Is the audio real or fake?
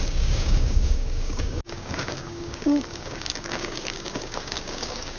fake